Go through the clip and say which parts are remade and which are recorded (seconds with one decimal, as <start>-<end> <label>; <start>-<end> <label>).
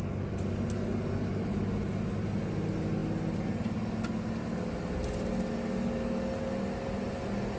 0.0-7.6 recorded